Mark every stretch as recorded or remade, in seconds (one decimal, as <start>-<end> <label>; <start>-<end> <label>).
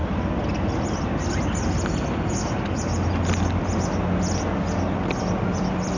0.0-6.0 recorded